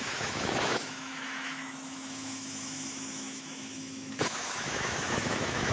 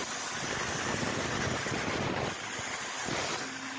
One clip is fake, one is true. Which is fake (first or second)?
first